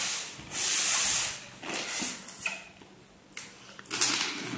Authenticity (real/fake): real